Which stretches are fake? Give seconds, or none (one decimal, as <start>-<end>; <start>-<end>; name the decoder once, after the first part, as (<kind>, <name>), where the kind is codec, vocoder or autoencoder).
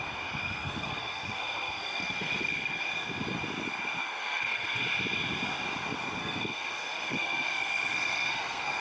0.4-2.8 (codec, SNAC); 4.0-4.8; 6.2-8.8